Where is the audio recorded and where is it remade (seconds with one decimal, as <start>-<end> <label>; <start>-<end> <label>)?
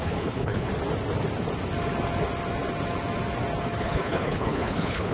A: 0.0-0.7 remade; 0.7-3.8 recorded; 3.8-5.1 remade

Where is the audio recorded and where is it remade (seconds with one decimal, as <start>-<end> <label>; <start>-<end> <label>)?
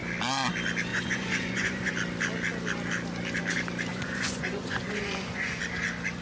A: 0.0-0.9 recorded; 0.9-1.9 remade; 1.9-3.9 recorded; 3.9-5.6 remade; 5.6-6.2 recorded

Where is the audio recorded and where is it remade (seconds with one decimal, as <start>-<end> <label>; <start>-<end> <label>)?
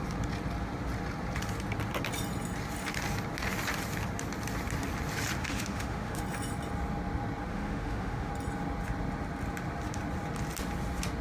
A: 0.0-5.4 recorded; 5.4-6.2 remade; 6.2-7.5 recorded; 7.5-8.3 remade; 8.3-11.2 recorded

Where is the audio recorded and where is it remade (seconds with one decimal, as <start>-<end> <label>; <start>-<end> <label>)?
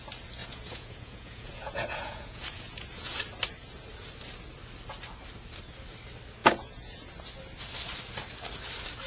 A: 0.0-0.4 recorded; 0.4-3.2 remade; 3.2-6.4 recorded; 6.4-7.1 remade; 7.1-9.1 recorded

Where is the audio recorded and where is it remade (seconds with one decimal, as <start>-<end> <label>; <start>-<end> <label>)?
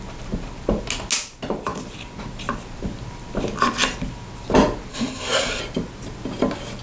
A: 0.0-4.9 recorded; 4.9-5.6 remade; 5.6-6.8 recorded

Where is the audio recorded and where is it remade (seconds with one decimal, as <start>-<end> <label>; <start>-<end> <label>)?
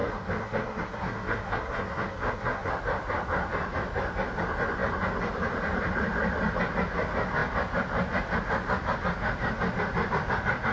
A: 0.0-2.7 remade; 2.7-10.7 recorded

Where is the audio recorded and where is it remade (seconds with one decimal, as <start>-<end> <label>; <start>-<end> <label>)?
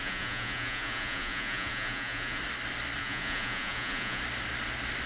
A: 0.0-2.4 remade; 2.4-3.0 recorded; 3.0-4.2 remade; 4.2-5.1 recorded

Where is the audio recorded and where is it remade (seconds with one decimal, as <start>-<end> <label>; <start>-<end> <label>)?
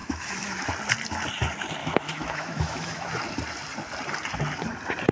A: 0.0-0.6 remade; 0.6-1.8 recorded; 1.8-3.1 remade; 3.1-5.1 recorded